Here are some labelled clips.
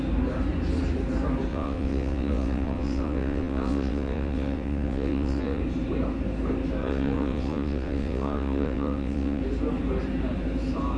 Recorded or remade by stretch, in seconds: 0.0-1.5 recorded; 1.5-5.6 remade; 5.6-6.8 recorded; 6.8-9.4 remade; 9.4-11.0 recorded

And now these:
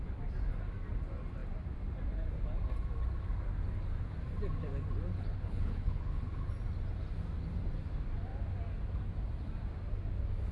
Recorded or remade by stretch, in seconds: 0.0-5.1 recorded; 5.1-6.5 remade; 6.5-10.5 recorded

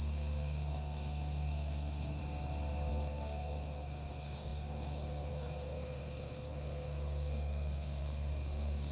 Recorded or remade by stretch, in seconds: 0.0-2.2 remade; 2.2-2.9 recorded; 2.9-8.9 remade